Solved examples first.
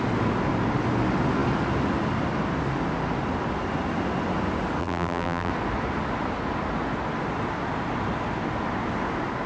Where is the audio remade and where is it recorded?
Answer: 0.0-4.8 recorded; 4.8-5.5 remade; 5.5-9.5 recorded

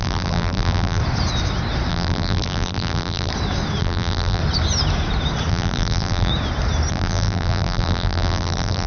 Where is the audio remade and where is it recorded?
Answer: 0.0-1.0 remade; 1.0-1.9 recorded; 1.9-3.3 remade; 3.3-3.8 recorded; 3.8-4.4 remade; 4.4-5.5 recorded; 5.5-6.3 remade; 6.3-6.9 recorded; 6.9-8.9 remade

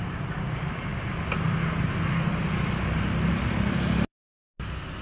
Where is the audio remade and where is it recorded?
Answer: 0.0-0.9 remade; 0.9-3.3 recorded; 3.3-4.3 remade; 4.3-5.0 recorded

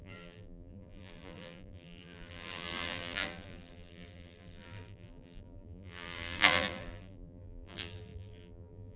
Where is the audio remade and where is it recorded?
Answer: 0.0-9.0 remade

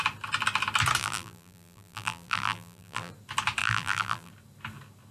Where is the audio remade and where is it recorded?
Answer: 0.0-1.0 recorded; 1.0-3.1 remade; 3.1-3.6 recorded; 3.6-4.3 remade; 4.3-5.1 recorded